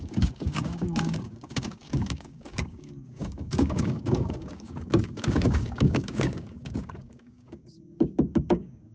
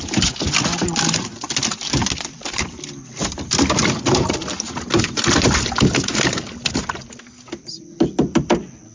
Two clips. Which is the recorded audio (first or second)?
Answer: second